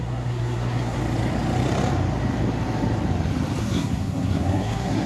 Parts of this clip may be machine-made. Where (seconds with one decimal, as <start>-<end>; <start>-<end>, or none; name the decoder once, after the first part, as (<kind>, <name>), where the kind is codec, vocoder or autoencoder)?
0.0-1.0 (codec, SNAC); 3.6-5.1